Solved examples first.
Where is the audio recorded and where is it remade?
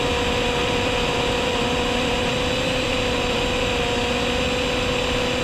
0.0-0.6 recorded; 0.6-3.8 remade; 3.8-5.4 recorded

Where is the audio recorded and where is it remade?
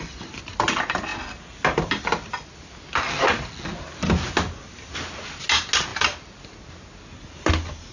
0.0-7.9 recorded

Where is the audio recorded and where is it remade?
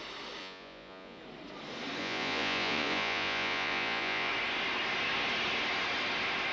0.0-0.4 recorded; 0.4-1.2 remade; 1.2-2.0 recorded; 2.0-4.3 remade; 4.3-6.5 recorded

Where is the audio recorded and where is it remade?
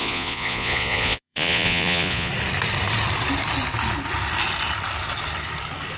0.0-2.3 remade; 2.3-6.0 recorded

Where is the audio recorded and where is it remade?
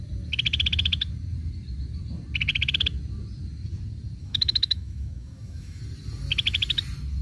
0.0-4.2 recorded; 4.2-5.8 remade; 5.8-7.2 recorded